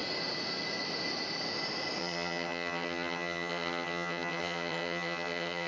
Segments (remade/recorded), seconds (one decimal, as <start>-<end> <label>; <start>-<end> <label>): 0.0-2.0 recorded; 2.0-5.7 remade